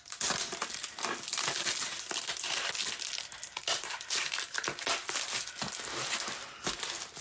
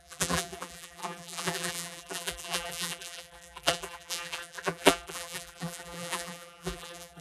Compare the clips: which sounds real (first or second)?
first